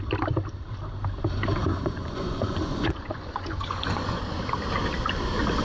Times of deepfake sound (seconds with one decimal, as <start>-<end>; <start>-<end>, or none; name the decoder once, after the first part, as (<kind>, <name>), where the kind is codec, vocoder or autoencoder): 1.6-4.2 (vocoder, Vocos)